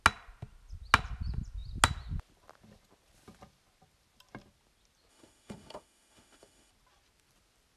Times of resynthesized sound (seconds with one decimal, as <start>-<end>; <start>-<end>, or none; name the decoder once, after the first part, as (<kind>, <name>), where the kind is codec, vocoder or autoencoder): 5.1-6.7 (autoencoder, DAC-VAE)